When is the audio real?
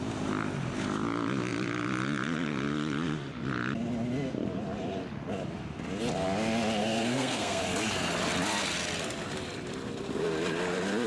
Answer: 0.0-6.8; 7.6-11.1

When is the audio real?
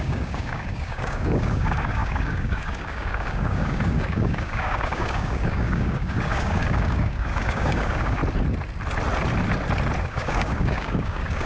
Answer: 8.2-10.0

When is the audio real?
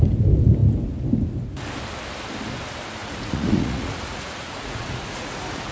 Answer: 0.0-3.0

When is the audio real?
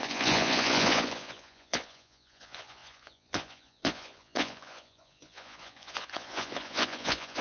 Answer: none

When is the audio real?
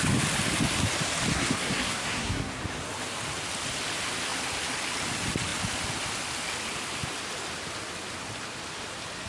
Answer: 0.0-1.3; 2.6-9.3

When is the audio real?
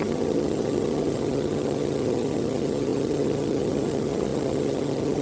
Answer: none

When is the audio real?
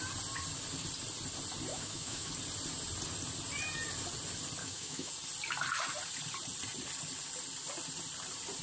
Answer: 0.0-1.7; 2.3-4.6; 5.1-8.6